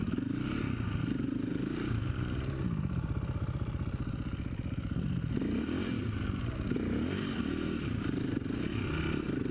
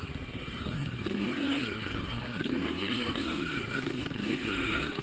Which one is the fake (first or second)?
second